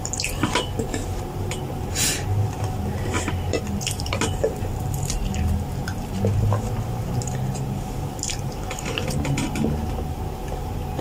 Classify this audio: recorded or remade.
remade